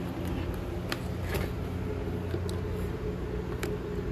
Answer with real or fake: real